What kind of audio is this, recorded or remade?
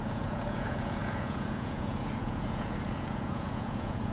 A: remade